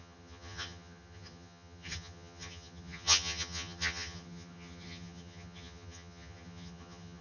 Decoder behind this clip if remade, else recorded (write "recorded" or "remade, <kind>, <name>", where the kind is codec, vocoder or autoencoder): remade, vocoder, HiFi-GAN